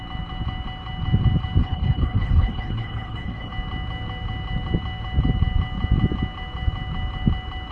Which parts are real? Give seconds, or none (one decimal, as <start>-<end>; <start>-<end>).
0.0-1.6; 3.5-7.7